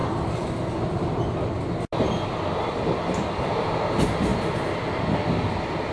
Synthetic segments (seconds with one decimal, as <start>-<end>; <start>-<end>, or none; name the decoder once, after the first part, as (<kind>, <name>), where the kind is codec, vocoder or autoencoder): none